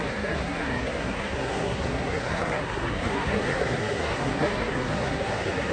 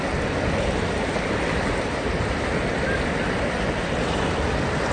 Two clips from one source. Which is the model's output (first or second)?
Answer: first